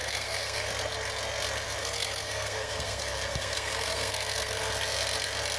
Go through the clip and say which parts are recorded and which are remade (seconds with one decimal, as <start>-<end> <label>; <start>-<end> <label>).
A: 0.0-0.7 remade; 0.7-1.8 recorded; 1.8-4.7 remade; 4.7-5.6 recorded